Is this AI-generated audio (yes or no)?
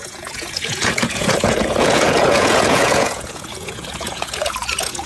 yes